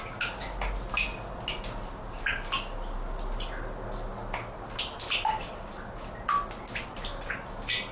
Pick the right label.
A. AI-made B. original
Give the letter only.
B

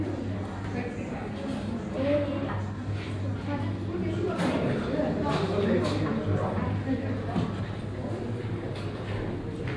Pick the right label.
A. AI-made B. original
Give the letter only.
B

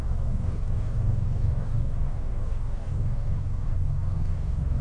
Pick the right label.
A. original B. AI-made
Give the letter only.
B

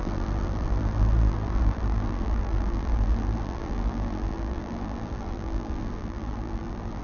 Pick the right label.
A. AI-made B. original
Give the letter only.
A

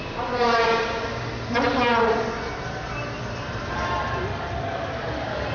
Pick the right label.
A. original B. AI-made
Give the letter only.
A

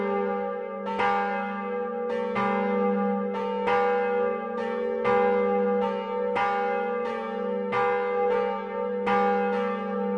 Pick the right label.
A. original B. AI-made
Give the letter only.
A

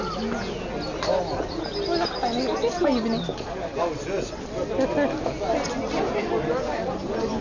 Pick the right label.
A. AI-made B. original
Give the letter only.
B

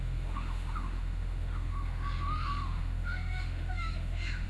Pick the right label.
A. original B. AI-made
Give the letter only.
B